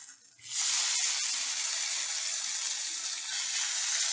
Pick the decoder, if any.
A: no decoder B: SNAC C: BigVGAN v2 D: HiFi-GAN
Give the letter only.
A